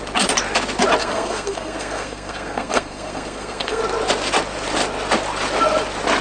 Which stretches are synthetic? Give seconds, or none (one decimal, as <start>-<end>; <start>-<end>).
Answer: 1.0-3.8